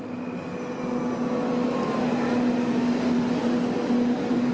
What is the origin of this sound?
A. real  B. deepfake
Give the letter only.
A